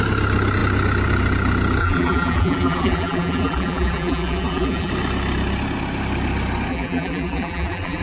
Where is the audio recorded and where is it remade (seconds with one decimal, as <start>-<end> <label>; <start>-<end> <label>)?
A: 0.0-1.8 recorded; 1.8-4.9 remade; 4.9-6.7 recorded; 6.7-8.0 remade